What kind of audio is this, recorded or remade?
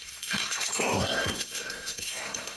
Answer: remade